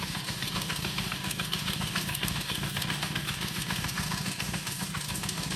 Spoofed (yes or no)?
yes